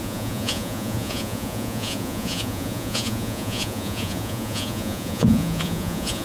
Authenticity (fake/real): fake